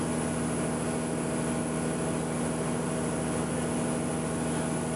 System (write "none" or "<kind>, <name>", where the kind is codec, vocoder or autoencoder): none